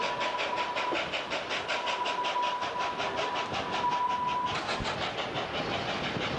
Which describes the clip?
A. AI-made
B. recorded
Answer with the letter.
B